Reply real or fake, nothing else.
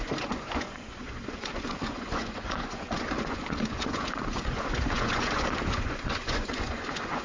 fake